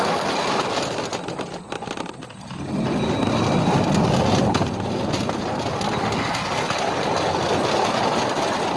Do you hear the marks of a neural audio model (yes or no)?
no